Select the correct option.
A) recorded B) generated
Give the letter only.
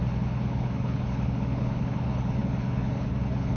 B